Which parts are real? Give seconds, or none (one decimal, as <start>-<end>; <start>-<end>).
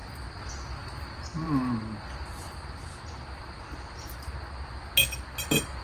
0.5-1.3; 4.4-5.8